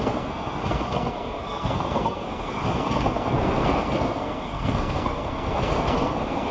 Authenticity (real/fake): fake